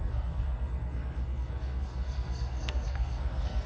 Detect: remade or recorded remade